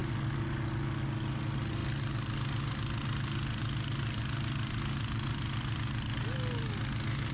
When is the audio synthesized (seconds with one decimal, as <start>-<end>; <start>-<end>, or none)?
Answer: none